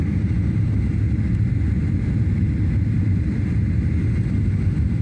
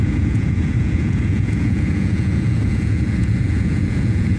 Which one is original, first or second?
first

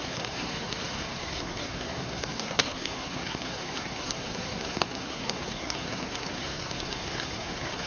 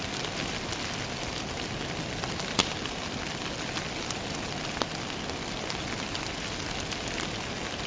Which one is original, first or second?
second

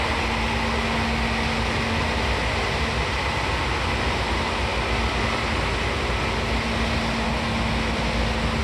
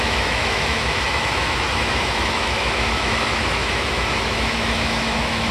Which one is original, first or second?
first